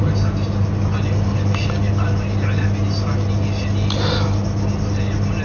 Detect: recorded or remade recorded